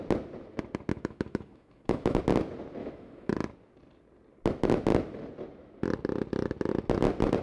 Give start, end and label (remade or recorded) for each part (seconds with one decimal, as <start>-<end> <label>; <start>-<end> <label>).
0.0-0.9 recorded; 0.9-2.2 remade; 2.2-2.8 recorded; 2.8-3.3 remade; 3.3-7.4 recorded